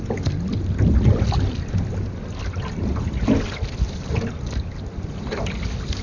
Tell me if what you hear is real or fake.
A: real